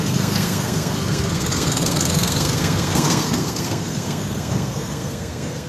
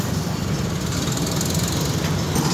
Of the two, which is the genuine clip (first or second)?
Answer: second